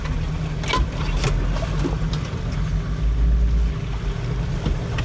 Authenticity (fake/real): real